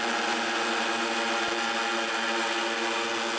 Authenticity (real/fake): real